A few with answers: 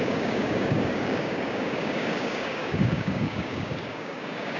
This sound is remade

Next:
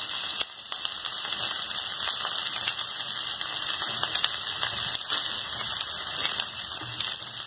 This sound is recorded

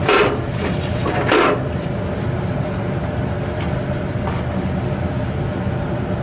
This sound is recorded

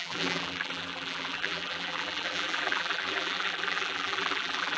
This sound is remade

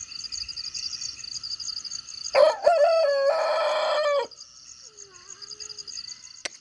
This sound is recorded